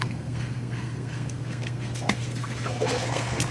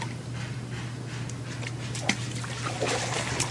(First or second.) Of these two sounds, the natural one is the second